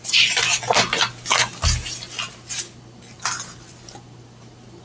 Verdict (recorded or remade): recorded